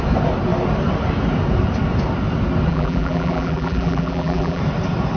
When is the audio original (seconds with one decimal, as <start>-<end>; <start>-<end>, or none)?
0.0-2.7; 4.6-5.2

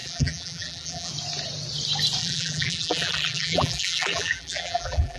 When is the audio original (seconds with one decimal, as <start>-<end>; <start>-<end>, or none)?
1.1-2.2

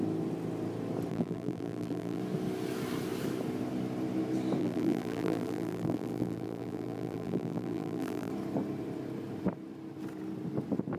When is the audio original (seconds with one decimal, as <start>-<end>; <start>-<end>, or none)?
0.0-1.1; 2.2-4.6; 8.3-11.0

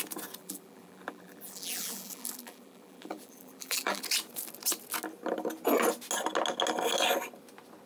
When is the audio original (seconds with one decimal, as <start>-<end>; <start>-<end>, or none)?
0.0-0.4; 4.0-7.9

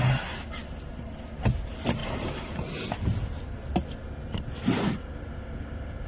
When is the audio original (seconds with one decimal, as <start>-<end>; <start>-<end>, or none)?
0.0-6.1

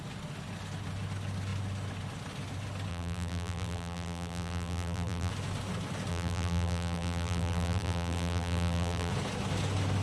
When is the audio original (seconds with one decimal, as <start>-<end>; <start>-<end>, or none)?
0.0-2.9; 5.3-6.1; 9.1-10.0

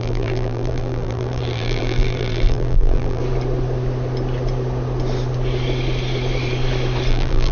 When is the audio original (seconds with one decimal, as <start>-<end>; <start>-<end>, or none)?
3.2-7.1

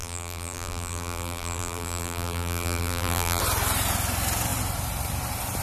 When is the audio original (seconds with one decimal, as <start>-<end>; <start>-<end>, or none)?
3.4-5.6